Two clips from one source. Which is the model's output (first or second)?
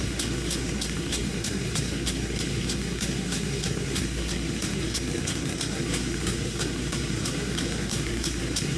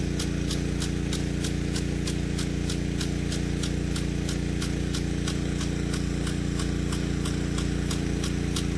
first